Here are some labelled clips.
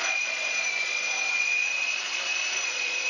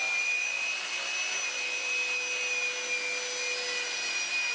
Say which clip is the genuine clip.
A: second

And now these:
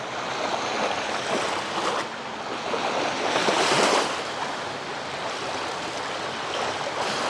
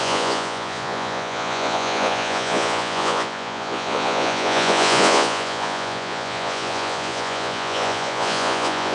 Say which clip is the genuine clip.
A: first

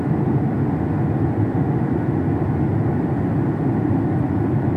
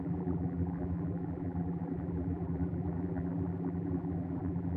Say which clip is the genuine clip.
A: first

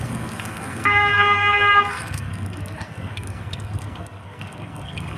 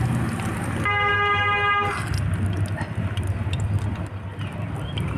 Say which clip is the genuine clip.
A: second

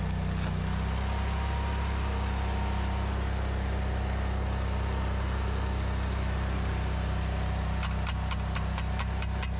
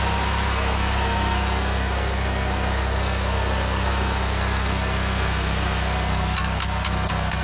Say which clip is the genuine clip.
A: first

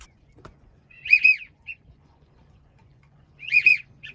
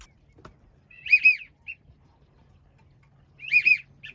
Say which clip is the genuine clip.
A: second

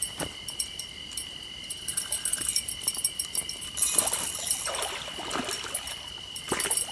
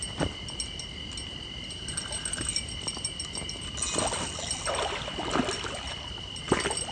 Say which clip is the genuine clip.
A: second